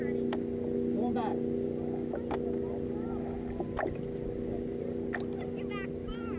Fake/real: real